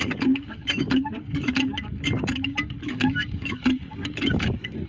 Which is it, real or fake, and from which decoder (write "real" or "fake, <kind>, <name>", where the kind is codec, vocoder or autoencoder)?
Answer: fake, codec, DAC